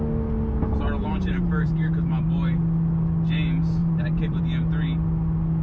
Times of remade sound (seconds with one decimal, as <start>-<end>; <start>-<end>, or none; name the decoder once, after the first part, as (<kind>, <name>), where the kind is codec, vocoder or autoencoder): 1.0-2.6 (vocoder, BigVGAN v2); 3.8-4.4